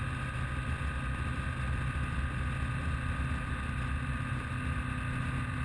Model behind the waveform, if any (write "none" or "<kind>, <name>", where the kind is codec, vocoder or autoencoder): none